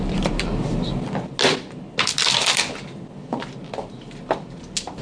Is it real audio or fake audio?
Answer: real